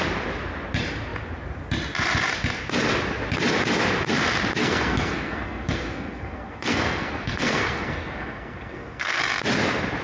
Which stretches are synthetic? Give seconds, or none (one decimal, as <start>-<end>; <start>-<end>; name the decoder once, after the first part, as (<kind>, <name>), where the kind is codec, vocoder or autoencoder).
4.6-9.2 (codec, SNAC)